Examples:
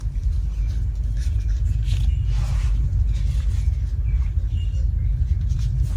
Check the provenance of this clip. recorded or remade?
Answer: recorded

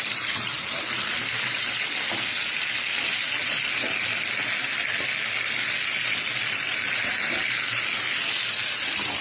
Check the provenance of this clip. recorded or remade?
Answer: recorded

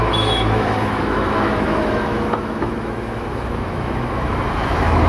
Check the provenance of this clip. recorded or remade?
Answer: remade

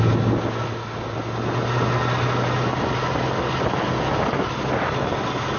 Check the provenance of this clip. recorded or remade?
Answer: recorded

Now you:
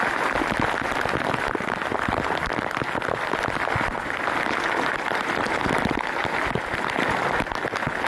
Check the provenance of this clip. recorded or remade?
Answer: recorded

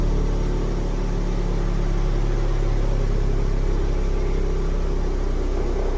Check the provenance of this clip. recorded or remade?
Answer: recorded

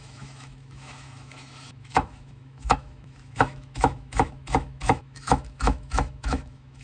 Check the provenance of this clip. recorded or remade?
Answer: remade